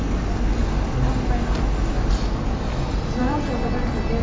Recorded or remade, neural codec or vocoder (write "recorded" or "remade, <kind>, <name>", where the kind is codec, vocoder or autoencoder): recorded